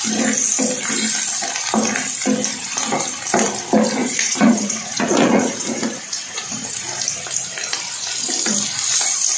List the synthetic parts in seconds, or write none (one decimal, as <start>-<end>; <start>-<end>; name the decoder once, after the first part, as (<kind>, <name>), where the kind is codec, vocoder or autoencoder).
4.0-6.5 (vocoder, Vocos)